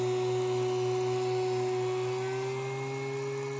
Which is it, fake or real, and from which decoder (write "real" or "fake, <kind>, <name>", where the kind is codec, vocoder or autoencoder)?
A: real